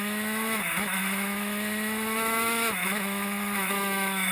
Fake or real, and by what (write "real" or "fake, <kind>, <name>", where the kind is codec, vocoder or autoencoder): fake, autoencoder, DAC-VAE